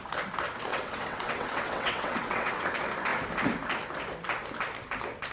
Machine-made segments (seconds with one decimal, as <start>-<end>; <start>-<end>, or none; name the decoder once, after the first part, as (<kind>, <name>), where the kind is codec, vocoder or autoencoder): 0.7-2.5 (vocoder, WaveNeXt)